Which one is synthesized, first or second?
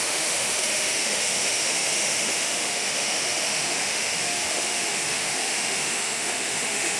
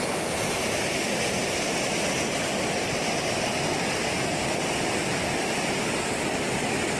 first